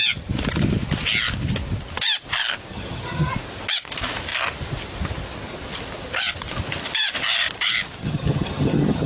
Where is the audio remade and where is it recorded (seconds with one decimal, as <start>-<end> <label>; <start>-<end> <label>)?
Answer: 0.0-2.7 recorded; 2.7-3.3 remade; 3.3-8.0 recorded; 8.0-9.1 remade